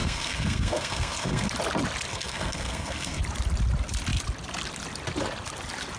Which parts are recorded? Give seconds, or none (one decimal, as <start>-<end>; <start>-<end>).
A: 1.5-2.1; 3.2-6.0